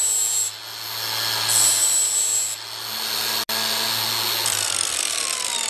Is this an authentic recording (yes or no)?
yes